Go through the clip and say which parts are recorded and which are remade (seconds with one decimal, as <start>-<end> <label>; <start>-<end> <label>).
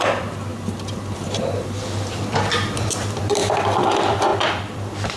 0.0-5.2 remade